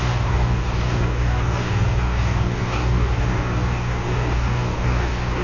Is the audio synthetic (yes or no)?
yes